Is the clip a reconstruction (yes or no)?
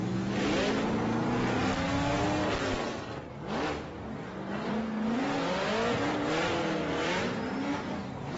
no